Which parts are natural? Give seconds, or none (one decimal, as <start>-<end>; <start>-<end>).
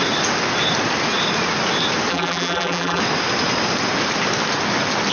0.0-2.1; 3.0-5.1